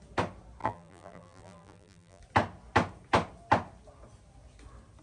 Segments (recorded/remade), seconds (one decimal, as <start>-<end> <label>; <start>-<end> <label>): 0.0-0.6 recorded; 0.6-2.2 remade; 2.2-5.0 recorded